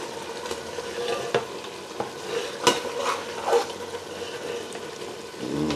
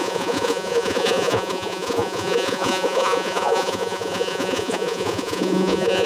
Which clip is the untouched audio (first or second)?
first